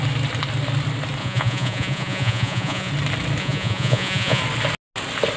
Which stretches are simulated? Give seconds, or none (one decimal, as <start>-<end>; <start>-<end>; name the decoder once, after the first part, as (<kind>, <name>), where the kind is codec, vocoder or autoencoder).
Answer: 1.2-2.9 (vocoder, Vocos); 3.4-4.4

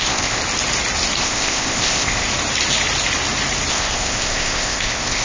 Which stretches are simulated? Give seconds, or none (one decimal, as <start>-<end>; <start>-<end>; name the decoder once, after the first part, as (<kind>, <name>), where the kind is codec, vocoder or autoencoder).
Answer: 0.0-0.4 (codec, ZipCodec); 1.2-2.3; 3.7-5.2

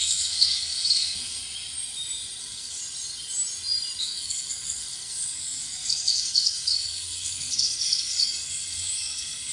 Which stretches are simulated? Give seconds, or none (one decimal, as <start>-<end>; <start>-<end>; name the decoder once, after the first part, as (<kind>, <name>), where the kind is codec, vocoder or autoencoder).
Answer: 0.0-1.4 (codec, SNAC); 2.4-2.8; 4.0-9.5